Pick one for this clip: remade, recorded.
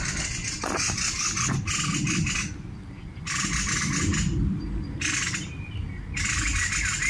recorded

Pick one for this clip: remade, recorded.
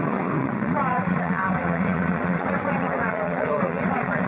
remade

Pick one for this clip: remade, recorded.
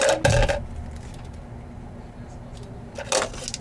recorded